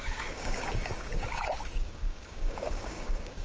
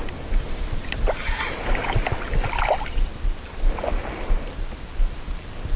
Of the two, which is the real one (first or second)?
second